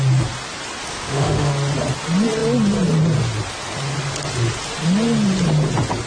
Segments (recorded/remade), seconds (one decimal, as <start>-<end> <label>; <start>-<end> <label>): 0.0-0.9 recorded; 0.9-1.5 remade; 1.5-6.1 recorded